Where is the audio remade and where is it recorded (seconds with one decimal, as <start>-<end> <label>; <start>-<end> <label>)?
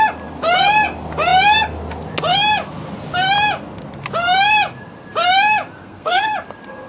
0.0-5.8 recorded; 5.8-6.3 remade; 6.3-6.9 recorded